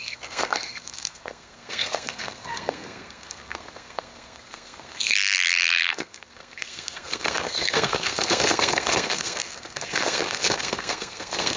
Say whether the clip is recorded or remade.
remade